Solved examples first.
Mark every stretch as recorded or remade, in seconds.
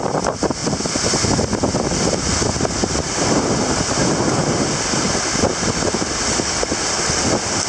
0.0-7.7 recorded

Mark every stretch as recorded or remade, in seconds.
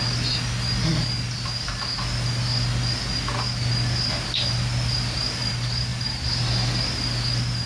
0.0-5.9 recorded; 5.9-6.5 remade; 6.5-7.7 recorded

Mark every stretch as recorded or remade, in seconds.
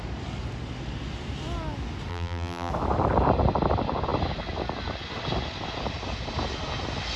0.0-2.1 recorded; 2.1-2.7 remade; 2.7-7.2 recorded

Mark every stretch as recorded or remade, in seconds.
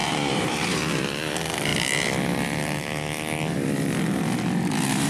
0.0-0.8 remade; 0.8-5.1 recorded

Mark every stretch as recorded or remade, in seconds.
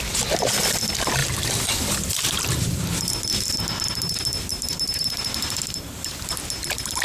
0.0-1.2 recorded; 1.2-3.1 remade; 3.1-4.5 recorded; 4.5-6.4 remade; 6.4-7.0 recorded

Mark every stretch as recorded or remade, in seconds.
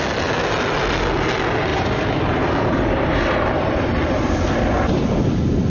0.0-1.7 recorded; 1.7-4.6 remade; 4.6-5.7 recorded